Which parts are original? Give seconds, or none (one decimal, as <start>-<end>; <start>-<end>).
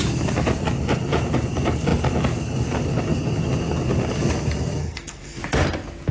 0.0-4.8; 5.4-6.1